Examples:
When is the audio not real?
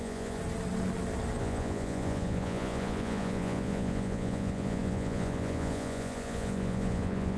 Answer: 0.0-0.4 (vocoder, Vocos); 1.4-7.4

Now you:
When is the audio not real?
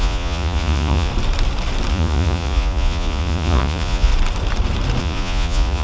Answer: 0.0-1.1 (vocoder, Vocos); 1.9-4.1; 5.0-5.8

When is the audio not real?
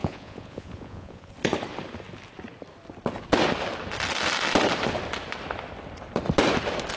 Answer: 0.0-1.3 (vocoder, Vocos)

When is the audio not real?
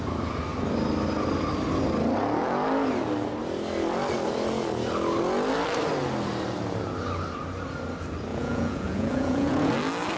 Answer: 8.3-9.7 (vocoder, Vocos)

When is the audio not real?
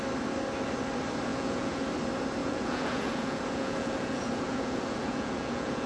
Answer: 1.3-1.8 (vocoder, Vocos); 2.4-5.9